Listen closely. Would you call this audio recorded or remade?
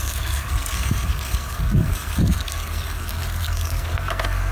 remade